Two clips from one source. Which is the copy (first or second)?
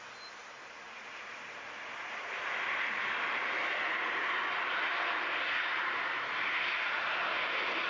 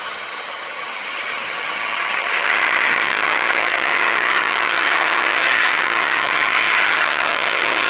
second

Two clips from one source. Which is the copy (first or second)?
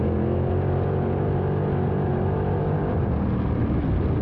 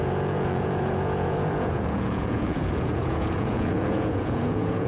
second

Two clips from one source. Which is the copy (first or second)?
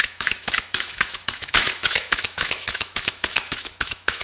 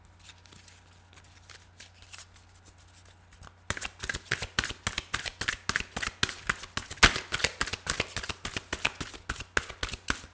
first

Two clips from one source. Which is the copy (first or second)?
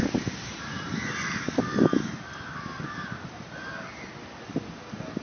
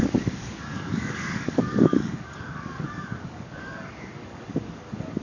second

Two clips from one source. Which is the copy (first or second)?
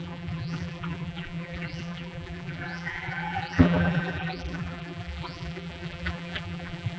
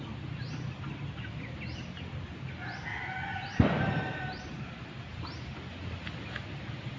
first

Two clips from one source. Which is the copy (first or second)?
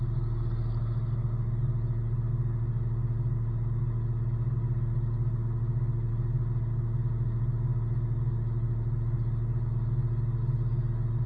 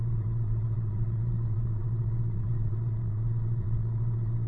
second